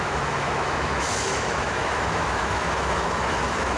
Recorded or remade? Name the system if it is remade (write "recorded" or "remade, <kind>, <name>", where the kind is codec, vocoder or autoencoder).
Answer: remade, autoencoder, DAC-VAE